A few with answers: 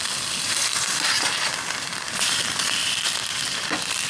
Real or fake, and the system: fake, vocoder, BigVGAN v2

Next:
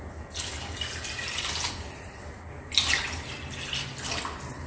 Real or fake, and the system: real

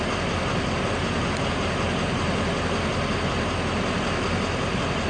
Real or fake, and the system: real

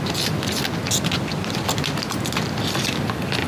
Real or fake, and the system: real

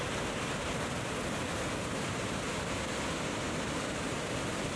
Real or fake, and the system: real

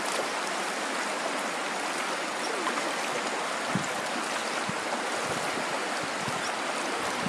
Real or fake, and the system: real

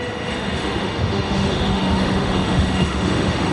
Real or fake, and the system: fake, autoencoder, DAC-VAE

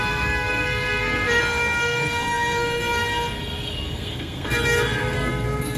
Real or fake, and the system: fake, codec, SNAC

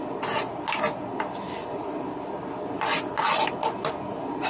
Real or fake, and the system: real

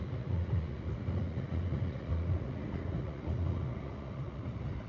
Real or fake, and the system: fake, vocoder, Vocos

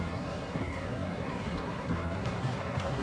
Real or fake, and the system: fake, codec, SNAC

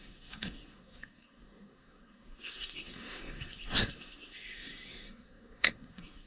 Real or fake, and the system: fake, codec, SNAC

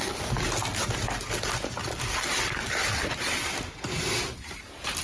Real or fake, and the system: real